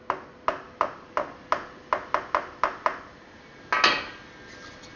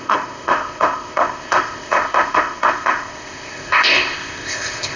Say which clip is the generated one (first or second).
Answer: second